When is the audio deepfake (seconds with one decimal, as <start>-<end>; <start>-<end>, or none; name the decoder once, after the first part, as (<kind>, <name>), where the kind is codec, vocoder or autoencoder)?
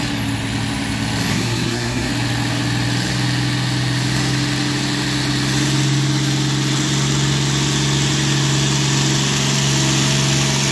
1.3-2.1 (codec, SNAC)